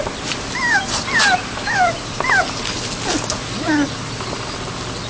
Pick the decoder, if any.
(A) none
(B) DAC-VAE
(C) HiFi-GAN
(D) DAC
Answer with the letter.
A